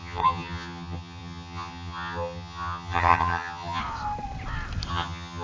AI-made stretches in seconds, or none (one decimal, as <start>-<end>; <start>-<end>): 0.0-3.8; 4.9-5.4